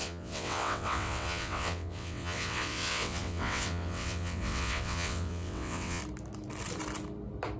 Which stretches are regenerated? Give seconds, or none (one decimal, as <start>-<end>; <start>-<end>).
0.0-6.0